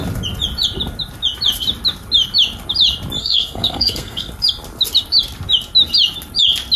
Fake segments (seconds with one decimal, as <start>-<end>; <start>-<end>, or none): 3.2-4.3